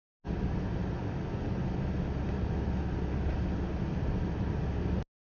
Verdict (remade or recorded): recorded